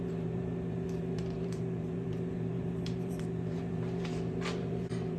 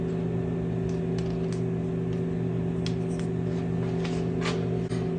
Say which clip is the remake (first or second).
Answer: first